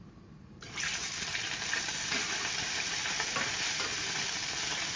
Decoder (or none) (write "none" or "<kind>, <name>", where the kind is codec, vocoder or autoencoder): vocoder, BigVGAN v2